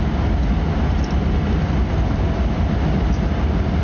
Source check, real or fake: real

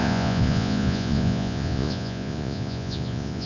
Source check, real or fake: fake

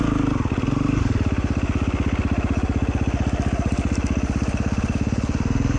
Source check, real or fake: real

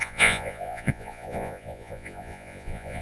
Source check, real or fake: fake